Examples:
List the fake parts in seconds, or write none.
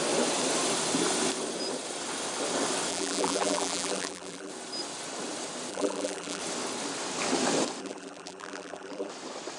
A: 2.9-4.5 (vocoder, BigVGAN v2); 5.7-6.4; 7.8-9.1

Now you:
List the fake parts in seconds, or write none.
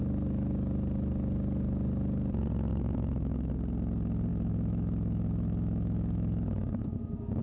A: 2.7-3.5 (autoencoder, DAC-VAE); 4.3-7.4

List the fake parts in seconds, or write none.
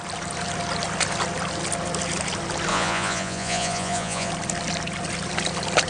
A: 2.7-4.3 (vocoder, Vocos)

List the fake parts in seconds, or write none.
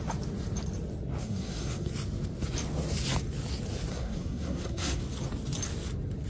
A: 1.2-1.9 (codec, SNAC); 3.9-5.0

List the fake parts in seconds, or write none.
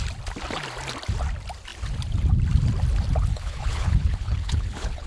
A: 3.3-5.1 (codec, HILCodec)